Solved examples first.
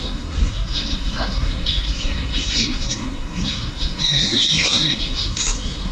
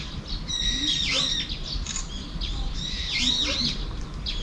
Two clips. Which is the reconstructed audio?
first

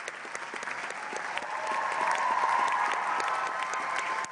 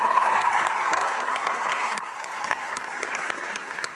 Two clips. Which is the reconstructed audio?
second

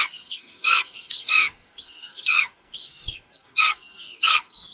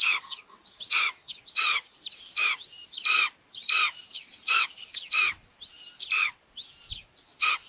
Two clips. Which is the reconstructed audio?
first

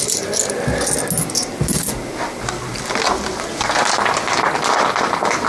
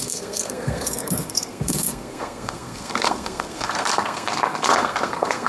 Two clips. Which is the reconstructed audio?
second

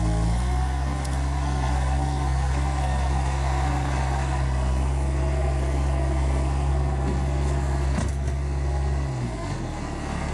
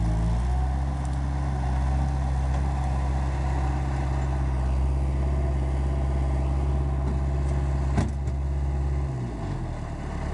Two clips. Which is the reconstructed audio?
first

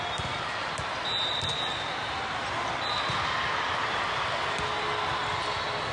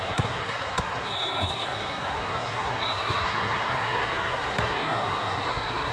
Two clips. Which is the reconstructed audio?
second